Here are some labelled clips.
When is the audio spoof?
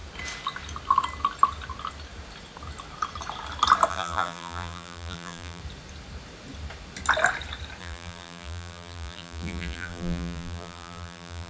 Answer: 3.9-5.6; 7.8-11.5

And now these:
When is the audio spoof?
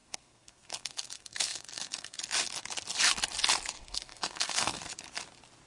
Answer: 0.0-2.2; 3.8-4.8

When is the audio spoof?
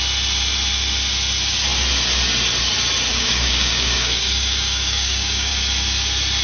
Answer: 3.1-5.5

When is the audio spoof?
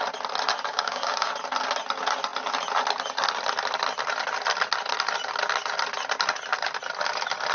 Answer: 0.7-1.3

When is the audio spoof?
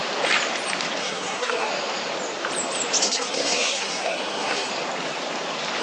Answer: 1.0-1.7; 3.0-4.7